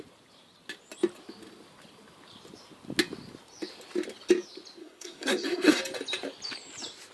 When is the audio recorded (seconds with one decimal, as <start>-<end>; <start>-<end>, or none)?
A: 0.0-4.8; 5.8-7.1